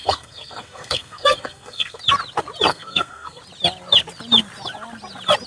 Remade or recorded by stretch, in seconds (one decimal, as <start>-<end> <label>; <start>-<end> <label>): 0.0-2.0 remade; 2.0-2.7 recorded; 2.7-3.4 remade; 3.4-5.5 recorded